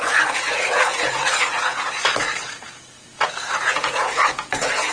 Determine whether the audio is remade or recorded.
remade